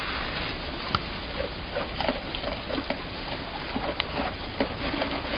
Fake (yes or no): no